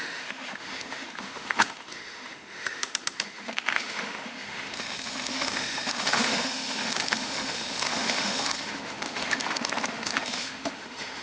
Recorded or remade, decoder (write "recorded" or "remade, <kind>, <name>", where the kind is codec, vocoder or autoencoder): remade, autoencoder, DAC-VAE